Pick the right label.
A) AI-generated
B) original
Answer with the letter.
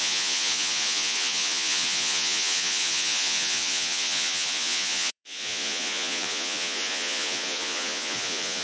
A